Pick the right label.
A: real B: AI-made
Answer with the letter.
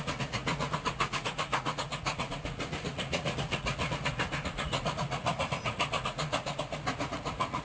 B